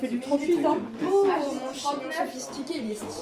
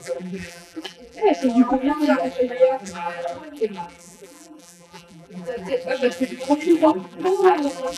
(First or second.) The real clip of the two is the first